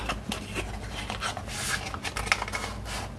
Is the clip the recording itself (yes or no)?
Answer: yes